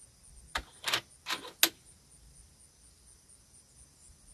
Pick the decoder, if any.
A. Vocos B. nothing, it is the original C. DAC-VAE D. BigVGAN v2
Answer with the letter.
B